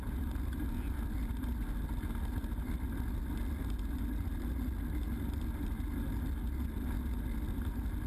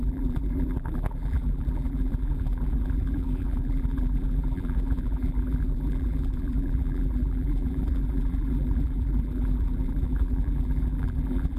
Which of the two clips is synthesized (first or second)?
second